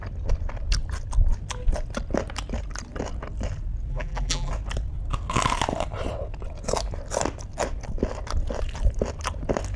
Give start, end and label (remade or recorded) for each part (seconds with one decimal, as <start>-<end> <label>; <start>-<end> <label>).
0.0-3.9 recorded; 3.9-4.5 remade; 4.5-9.8 recorded